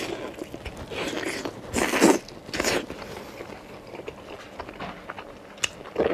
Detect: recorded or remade recorded